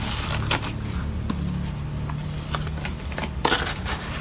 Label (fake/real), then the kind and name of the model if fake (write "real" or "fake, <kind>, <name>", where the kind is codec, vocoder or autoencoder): real